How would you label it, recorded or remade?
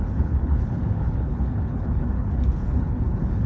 remade